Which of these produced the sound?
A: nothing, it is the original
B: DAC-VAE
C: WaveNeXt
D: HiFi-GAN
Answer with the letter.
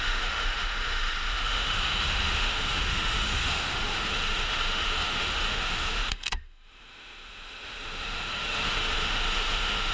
B